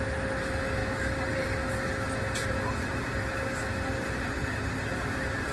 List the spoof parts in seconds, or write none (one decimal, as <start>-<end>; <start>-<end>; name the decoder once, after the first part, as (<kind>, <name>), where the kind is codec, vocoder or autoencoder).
none